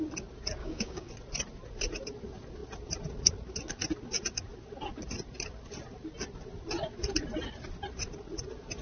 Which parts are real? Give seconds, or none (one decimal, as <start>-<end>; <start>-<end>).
0.0-0.6; 1.1-8.8